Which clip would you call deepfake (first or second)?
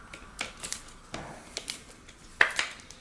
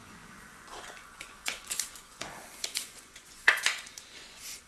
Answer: second